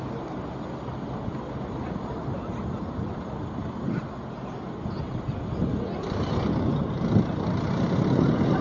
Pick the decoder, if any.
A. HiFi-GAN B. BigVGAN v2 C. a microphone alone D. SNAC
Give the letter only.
C